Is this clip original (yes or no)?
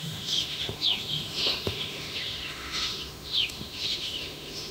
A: no